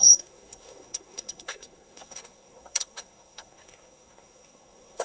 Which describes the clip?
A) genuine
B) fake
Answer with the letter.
B